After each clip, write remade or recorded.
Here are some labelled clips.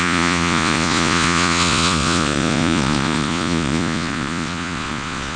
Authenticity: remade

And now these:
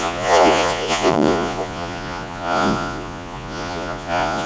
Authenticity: remade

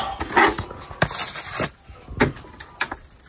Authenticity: recorded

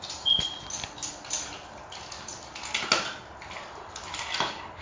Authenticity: recorded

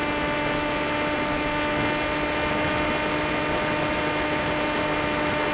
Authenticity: recorded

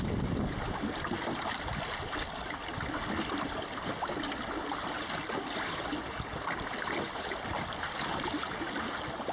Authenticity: recorded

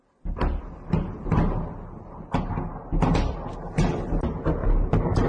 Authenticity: recorded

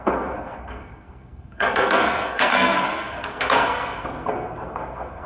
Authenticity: remade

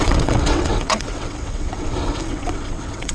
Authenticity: remade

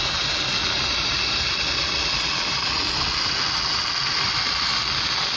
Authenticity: recorded